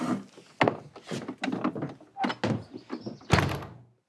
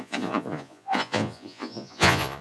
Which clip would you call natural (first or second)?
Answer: first